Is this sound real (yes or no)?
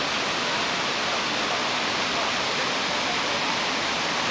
yes